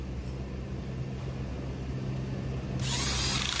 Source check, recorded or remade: recorded